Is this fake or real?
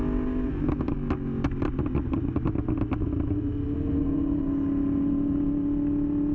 real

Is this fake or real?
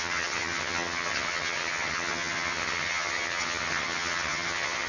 fake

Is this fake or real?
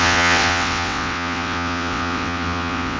fake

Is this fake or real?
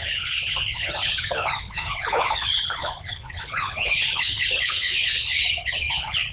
fake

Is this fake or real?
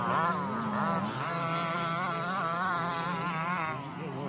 real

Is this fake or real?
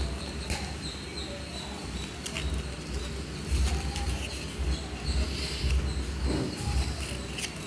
real